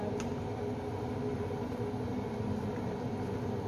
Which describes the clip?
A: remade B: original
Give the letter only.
B